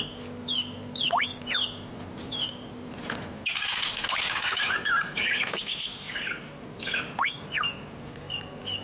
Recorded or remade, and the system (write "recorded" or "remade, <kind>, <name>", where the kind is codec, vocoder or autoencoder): recorded